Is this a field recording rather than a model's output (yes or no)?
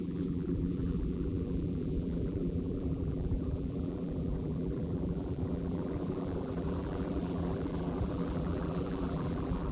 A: no